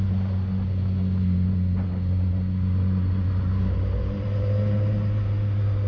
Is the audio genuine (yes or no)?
yes